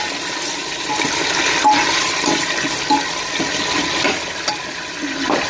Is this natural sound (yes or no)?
yes